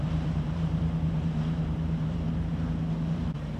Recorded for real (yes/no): no